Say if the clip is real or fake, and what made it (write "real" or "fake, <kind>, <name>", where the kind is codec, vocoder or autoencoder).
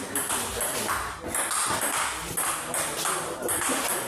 real